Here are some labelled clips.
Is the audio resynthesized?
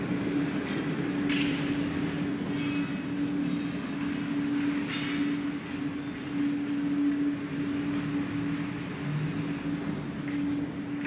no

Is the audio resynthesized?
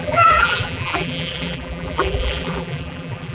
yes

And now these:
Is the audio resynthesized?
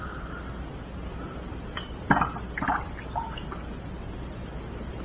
no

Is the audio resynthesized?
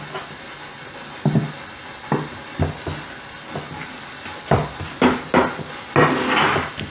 no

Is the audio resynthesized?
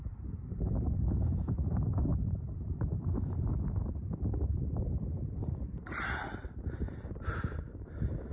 yes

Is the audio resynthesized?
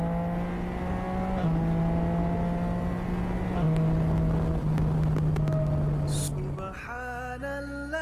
no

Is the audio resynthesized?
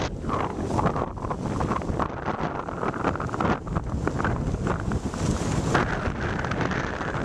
no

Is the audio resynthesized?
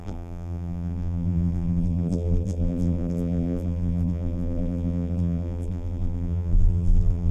yes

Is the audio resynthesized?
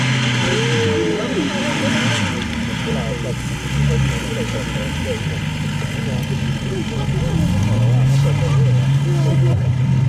no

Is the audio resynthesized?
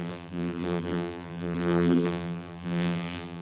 yes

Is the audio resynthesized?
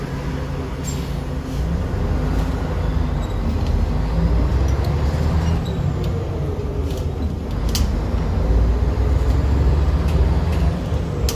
no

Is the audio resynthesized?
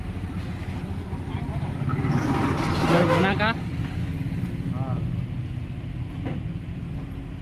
no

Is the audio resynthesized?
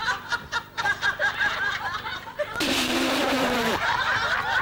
yes